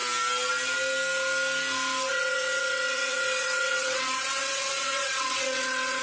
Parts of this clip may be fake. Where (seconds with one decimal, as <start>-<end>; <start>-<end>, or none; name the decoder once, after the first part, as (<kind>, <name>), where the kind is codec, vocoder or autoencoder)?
2.1-6.0 (vocoder, WaveNeXt)